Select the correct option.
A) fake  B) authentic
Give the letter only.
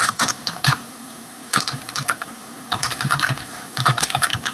A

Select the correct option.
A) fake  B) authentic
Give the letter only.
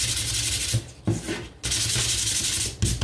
B